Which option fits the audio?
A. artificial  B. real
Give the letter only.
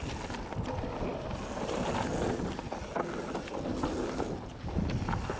B